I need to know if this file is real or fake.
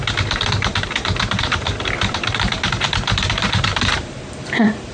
fake